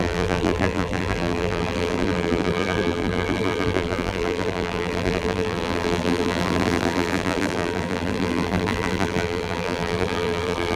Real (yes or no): no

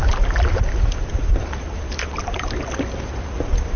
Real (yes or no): yes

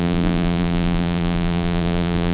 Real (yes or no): no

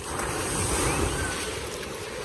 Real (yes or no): yes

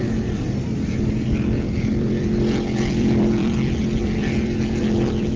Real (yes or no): no